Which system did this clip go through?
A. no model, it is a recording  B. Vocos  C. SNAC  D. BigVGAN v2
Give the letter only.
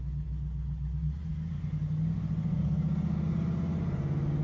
A